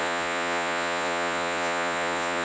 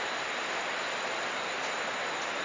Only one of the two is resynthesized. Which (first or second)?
first